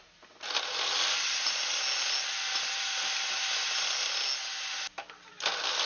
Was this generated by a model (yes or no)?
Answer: no